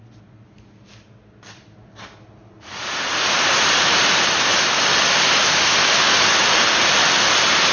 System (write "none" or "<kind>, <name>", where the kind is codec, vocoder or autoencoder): none